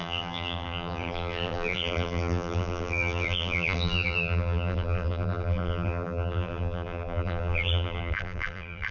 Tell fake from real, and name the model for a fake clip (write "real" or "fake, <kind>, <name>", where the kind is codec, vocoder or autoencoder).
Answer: fake, vocoder, BigVGAN v2